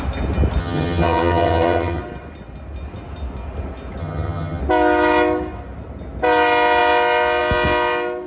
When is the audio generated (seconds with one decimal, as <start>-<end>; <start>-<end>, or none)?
0.6-2.0; 4.0-4.6

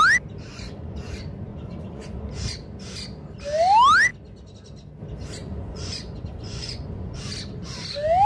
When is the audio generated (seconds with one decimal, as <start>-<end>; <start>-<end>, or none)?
0.5-1.1; 1.5-2.3; 5.4-7.2